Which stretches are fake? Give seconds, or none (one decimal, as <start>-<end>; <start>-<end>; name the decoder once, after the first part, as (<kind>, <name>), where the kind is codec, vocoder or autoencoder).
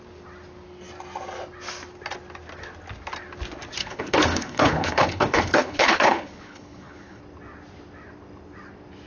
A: 3.8-7.2 (codec, HILCodec)